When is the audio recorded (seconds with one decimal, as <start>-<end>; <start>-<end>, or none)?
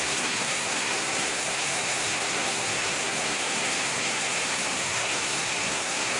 none